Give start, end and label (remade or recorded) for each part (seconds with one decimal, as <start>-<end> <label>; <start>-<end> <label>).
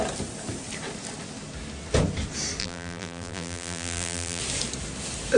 0.0-2.6 recorded; 2.6-4.4 remade; 4.4-5.4 recorded